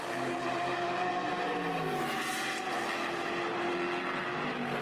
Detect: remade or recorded recorded